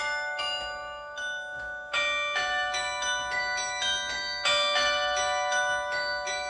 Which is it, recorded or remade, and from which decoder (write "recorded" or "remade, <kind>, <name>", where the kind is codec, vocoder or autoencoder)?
recorded